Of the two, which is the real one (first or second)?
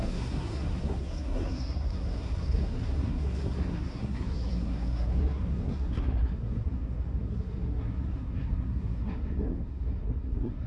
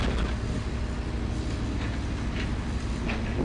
second